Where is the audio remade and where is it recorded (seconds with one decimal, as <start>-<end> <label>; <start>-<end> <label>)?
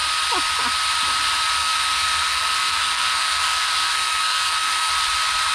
0.0-1.6 recorded; 1.6-4.9 remade; 4.9-5.5 recorded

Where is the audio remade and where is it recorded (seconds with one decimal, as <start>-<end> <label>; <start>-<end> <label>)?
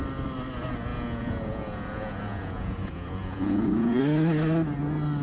0.0-0.9 recorded; 0.9-4.0 remade; 4.0-5.2 recorded